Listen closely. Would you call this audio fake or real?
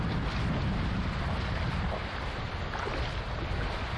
real